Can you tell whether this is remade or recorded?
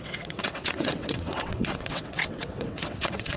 remade